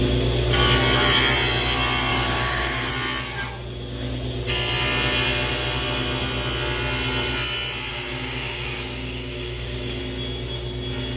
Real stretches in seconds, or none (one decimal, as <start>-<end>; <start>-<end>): 0.0-2.1; 2.9-7.9; 10.0-11.2